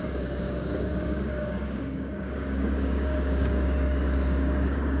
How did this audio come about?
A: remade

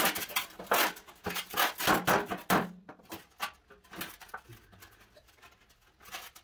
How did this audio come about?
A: recorded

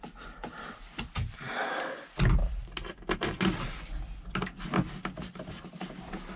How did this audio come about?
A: recorded